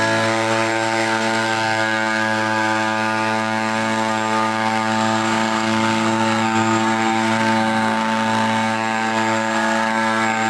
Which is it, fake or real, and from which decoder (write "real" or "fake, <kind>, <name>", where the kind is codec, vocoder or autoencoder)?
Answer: fake, codec, SNAC